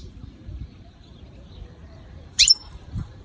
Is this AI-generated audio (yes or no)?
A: yes